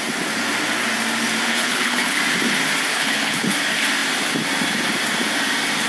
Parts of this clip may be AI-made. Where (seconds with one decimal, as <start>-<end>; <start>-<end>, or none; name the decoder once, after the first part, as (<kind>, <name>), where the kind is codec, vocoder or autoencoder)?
1.5-2.2 (codec, HILCodec); 2.9-3.5